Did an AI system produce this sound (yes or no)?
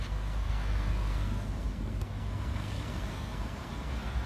yes